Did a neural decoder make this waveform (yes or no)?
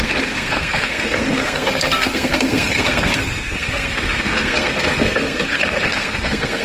yes